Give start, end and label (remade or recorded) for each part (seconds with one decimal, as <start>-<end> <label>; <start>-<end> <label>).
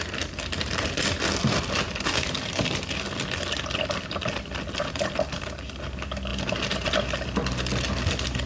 0.0-8.5 recorded